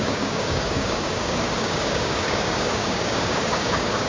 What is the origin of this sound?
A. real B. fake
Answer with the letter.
B